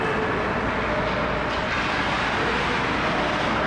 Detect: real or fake real